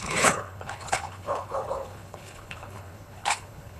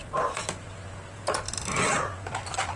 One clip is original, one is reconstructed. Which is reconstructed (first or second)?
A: first